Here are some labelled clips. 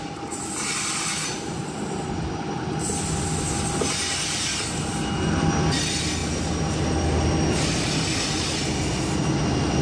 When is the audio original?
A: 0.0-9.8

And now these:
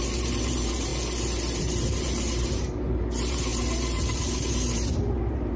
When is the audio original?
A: 0.9-1.6

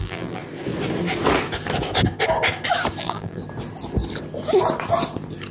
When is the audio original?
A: 0.4-3.0; 3.4-5.5

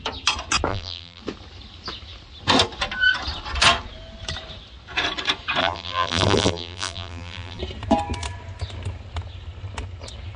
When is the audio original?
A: 0.0-0.7; 1.2-5.6; 7.6-10.4

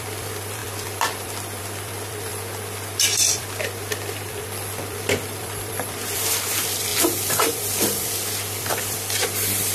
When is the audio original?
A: 6.9-7.4